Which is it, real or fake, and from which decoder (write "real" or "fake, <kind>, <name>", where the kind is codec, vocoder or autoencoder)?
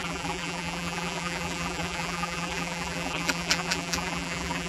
fake, vocoder, BigVGAN v2